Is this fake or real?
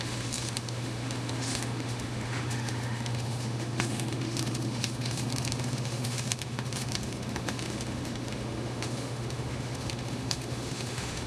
fake